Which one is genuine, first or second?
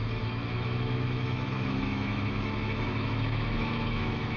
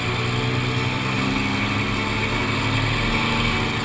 second